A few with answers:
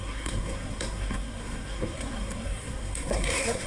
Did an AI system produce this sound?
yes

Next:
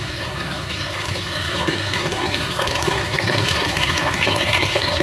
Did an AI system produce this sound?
yes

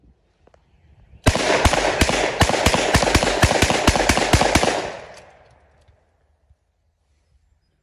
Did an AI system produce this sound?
no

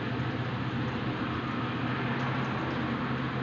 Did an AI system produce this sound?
no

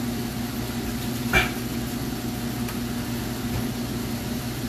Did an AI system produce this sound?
no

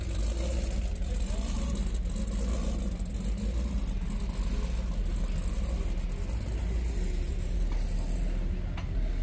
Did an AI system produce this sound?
no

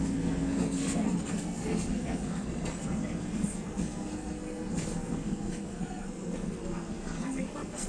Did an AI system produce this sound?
yes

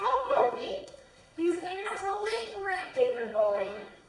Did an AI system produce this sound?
yes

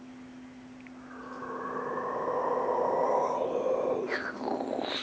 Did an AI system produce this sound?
no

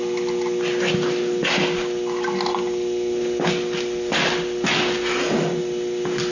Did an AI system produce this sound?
no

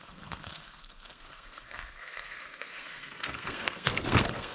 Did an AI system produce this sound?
yes